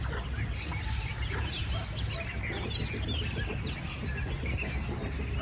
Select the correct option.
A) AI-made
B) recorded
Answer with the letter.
B